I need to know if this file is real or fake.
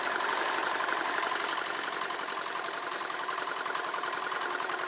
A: real